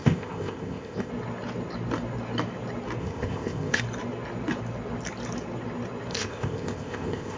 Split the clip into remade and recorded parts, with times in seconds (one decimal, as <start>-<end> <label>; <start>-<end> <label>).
0.0-1.1 remade; 1.1-3.0 recorded; 3.0-3.8 remade; 3.8-6.1 recorded; 6.1-7.4 remade